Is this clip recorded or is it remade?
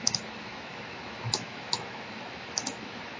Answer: remade